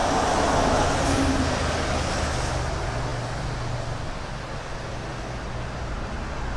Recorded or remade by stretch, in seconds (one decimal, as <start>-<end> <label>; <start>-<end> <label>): 0.0-6.6 recorded